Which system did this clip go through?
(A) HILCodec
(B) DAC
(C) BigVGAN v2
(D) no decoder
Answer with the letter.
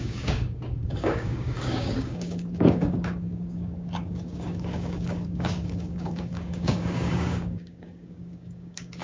B